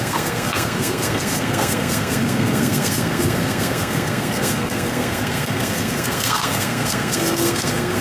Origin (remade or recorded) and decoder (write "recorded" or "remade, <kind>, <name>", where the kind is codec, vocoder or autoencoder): remade, codec, SNAC